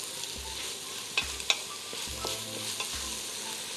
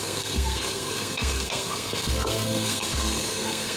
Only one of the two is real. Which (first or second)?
first